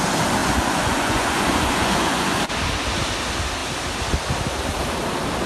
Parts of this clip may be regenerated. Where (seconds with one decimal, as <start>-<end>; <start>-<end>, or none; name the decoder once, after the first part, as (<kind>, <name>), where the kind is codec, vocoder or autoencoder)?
0.4-2.5 (vocoder, Vocos)